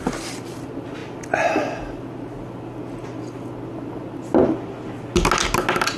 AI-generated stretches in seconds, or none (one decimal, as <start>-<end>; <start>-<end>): none